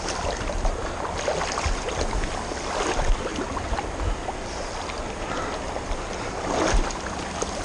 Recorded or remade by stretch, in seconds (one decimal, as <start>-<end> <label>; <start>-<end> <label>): 0.0-0.8 remade; 0.8-2.6 recorded; 2.6-3.3 remade; 3.3-6.1 recorded; 6.1-7.6 remade